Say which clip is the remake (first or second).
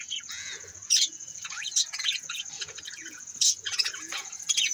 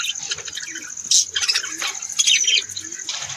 first